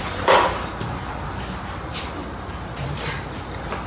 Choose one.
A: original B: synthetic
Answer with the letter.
A